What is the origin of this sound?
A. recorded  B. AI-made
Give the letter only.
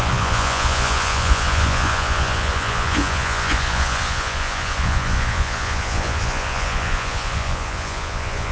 B